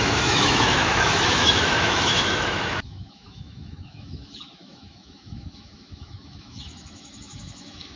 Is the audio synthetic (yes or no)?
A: yes